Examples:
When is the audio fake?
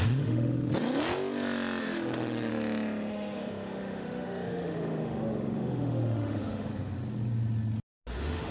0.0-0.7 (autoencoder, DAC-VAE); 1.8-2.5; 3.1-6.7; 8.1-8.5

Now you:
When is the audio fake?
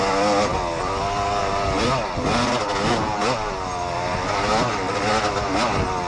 none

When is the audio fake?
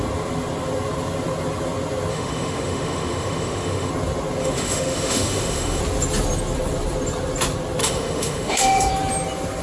2.1-3.9 (autoencoder, DAC-VAE); 4.4-5.8; 7.8-8.9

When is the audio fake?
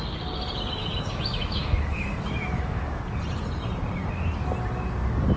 0.8-3.0 (autoencoder, DAC-VAE)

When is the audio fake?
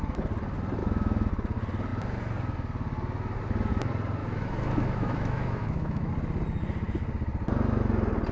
0.8-1.3 (autoencoder, DAC-VAE); 4.2-6.1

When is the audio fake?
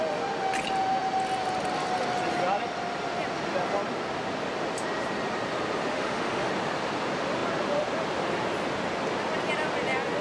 5.9-6.5 (autoencoder, DAC-VAE)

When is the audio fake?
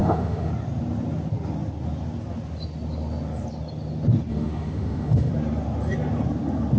0.0-0.5 (autoencoder, DAC-VAE); 4.3-5.3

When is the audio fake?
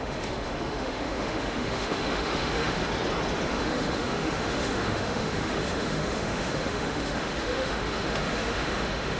0.0-2.8 (autoencoder, DAC-VAE); 3.5-9.2